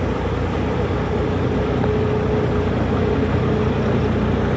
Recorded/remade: recorded